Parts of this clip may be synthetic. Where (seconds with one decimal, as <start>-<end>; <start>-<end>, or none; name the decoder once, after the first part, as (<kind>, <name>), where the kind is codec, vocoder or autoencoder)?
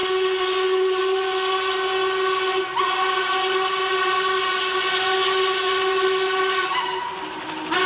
0.0-1.0 (vocoder, Vocos)